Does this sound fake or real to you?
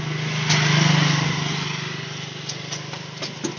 real